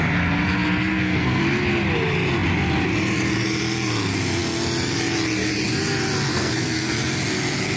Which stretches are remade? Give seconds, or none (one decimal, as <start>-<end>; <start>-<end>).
0.9-1.4; 6.3-6.9